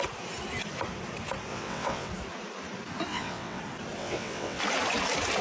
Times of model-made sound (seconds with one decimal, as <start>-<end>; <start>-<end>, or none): 1.5-2.1; 3.1-3.6; 4.0-4.6